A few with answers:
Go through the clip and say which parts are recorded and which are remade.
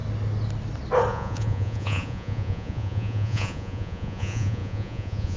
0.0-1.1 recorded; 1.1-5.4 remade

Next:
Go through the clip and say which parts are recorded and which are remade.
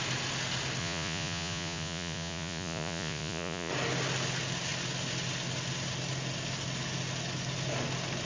0.0-0.8 recorded; 0.8-3.7 remade; 3.7-8.3 recorded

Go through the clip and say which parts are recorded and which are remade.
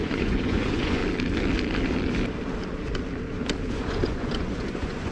0.0-1.0 remade; 1.0-3.7 recorded; 3.7-5.1 remade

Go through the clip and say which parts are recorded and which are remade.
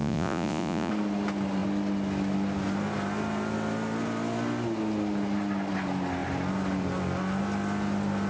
0.0-0.9 remade; 0.9-8.3 recorded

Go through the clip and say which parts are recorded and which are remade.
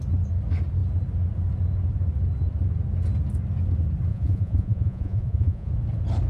0.0-4.1 recorded; 4.1-5.7 remade; 5.7-6.3 recorded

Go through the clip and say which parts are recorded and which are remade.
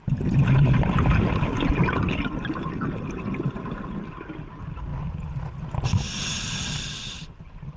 0.0-7.8 recorded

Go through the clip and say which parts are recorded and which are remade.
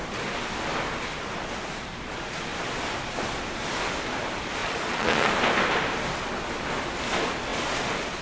0.0-4.6 recorded; 4.6-5.3 remade; 5.3-8.2 recorded